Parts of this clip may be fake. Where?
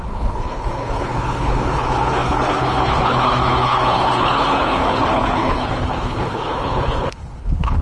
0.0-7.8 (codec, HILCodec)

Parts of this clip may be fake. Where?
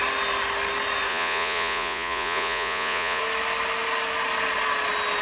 1.1-3.2 (vocoder, Vocos)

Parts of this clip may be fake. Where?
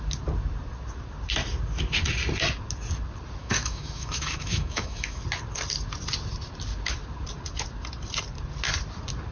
3.4-5.2 (autoencoder, DAC-VAE)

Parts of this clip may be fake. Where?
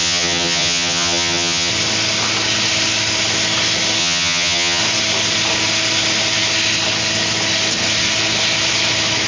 0.0-1.7 (vocoder, HiFi-GAN); 4.0-4.8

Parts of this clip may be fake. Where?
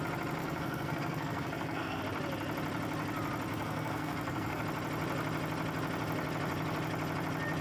0.4-2.0 (codec, SNAC); 3.5-4.6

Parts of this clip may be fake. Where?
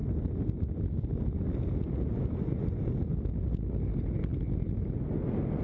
none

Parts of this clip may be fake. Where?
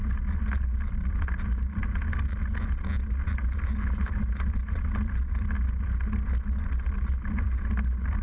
none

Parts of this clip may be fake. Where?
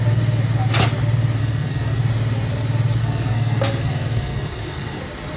1.4-2.0 (codec, SNAC); 3.0-5.0